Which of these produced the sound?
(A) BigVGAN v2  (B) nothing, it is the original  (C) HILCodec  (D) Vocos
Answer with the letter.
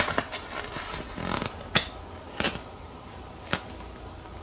B